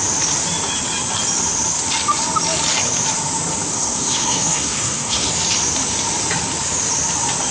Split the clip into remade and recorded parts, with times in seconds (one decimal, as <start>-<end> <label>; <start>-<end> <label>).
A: 0.0-3.7 recorded; 3.7-5.3 remade; 5.3-7.5 recorded